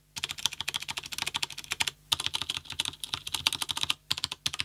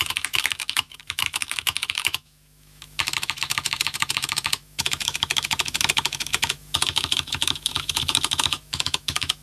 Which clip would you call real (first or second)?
first